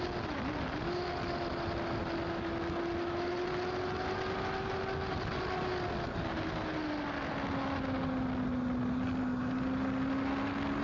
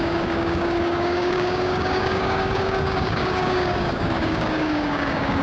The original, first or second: first